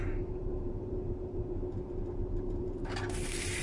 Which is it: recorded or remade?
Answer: remade